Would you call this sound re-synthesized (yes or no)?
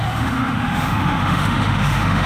yes